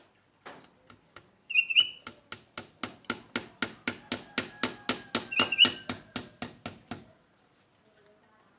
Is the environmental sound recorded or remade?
recorded